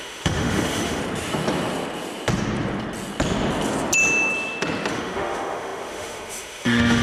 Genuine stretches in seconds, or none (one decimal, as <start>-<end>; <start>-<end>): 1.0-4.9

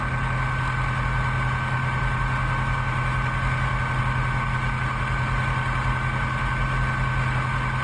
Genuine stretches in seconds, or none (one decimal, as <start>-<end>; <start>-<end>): 0.0-7.8

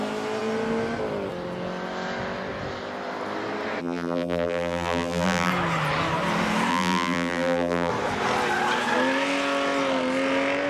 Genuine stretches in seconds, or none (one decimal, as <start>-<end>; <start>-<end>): 0.0-3.8; 5.5-6.7; 7.9-10.7

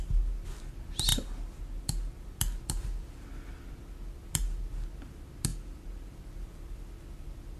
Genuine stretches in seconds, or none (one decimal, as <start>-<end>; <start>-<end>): 0.0-7.6